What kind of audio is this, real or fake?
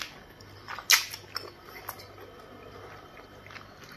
real